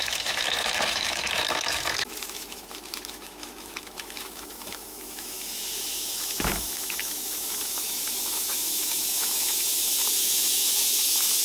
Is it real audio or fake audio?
fake